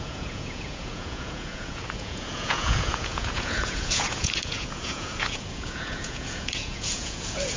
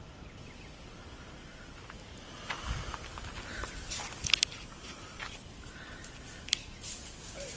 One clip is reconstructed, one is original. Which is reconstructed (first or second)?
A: first